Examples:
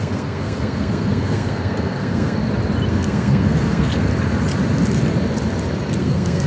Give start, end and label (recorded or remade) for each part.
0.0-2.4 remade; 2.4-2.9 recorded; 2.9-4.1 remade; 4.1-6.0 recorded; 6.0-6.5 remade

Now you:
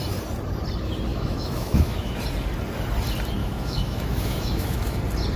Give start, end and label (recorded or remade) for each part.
0.0-1.1 recorded; 1.1-2.2 remade; 2.2-3.4 recorded; 3.4-5.0 remade; 5.0-5.4 recorded

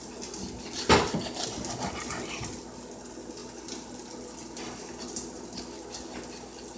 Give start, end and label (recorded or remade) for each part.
0.0-6.8 recorded

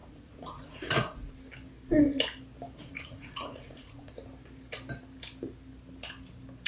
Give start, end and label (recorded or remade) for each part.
0.0-1.3 remade; 1.3-2.8 recorded; 2.8-4.1 remade; 4.1-6.7 recorded